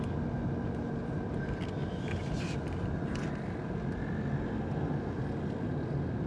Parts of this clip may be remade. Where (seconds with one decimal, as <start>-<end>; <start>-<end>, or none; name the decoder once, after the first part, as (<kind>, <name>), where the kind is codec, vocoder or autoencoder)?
none